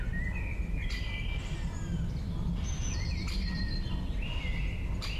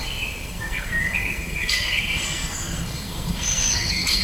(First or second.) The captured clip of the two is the first